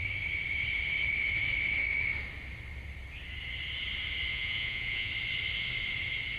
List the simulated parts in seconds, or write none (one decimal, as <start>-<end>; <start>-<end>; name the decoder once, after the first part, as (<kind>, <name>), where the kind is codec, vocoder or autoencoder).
4.3-5.1 (vocoder, Vocos)